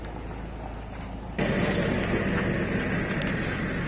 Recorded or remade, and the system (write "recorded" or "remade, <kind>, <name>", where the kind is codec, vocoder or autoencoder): recorded